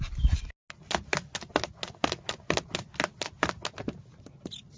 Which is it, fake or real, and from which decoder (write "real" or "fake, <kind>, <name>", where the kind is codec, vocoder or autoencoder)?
real